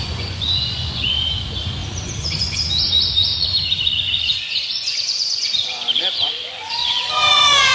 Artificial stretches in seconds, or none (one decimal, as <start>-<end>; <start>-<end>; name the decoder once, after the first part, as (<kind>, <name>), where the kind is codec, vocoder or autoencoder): 0.0-7.7 (vocoder, Vocos)